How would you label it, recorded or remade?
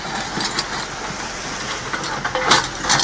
recorded